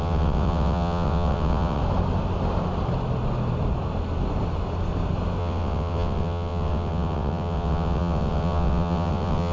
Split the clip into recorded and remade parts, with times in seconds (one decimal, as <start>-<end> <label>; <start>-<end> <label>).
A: 0.0-1.8 remade; 1.8-5.4 recorded; 5.4-9.5 remade